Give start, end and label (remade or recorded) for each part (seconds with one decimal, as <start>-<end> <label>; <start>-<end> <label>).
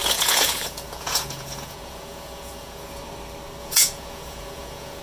0.0-3.0 remade; 3.0-3.6 recorded; 3.6-5.0 remade